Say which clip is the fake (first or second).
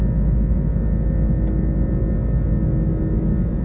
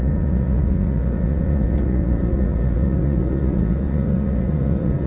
second